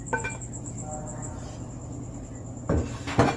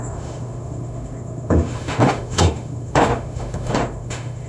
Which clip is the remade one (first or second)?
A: second